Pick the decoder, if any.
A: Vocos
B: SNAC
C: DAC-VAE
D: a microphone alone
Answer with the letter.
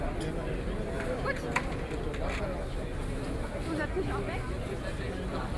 D